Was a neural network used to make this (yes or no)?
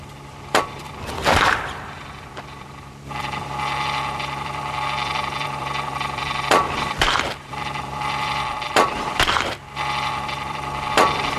yes